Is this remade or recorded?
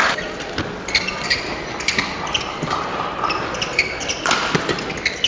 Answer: recorded